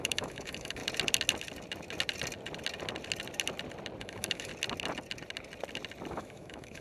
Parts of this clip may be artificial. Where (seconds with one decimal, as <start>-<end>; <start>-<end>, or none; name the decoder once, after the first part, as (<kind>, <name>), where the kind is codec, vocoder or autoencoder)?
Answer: 0.0-0.8 (autoencoder, DAC-VAE); 4.0-4.5; 6.1-6.8